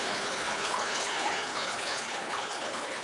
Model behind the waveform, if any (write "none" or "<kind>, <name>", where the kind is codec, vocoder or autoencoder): codec, HILCodec